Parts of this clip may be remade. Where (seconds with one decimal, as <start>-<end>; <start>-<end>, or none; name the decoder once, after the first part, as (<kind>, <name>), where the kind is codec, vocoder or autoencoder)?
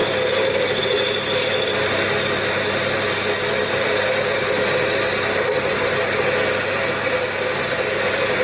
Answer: 0.0-0.8 (vocoder, BigVGAN v2); 3.6-4.4